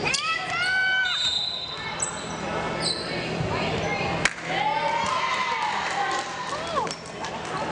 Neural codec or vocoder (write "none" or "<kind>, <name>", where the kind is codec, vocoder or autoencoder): none